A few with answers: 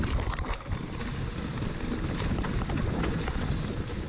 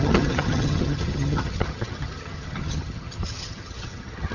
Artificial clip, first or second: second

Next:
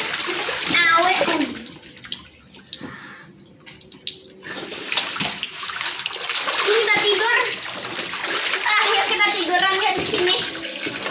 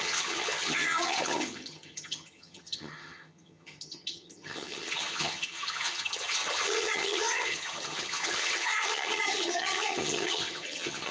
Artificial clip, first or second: second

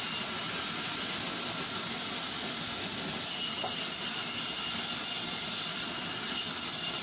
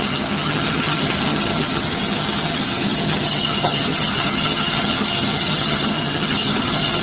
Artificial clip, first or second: second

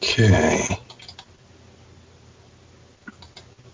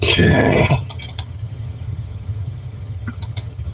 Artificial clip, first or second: second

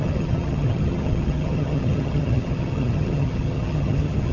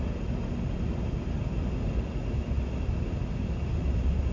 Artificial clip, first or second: first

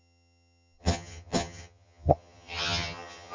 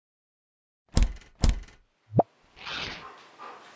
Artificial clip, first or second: first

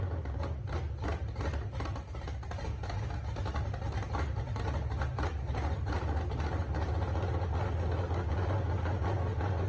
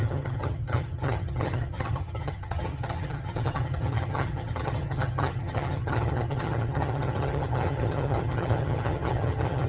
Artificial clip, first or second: second